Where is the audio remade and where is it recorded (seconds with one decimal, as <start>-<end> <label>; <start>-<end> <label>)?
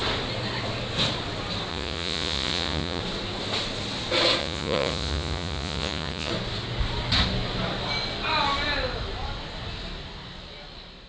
0.0-1.7 recorded; 1.7-3.0 remade; 3.0-4.4 recorded; 4.4-6.3 remade; 6.3-11.1 recorded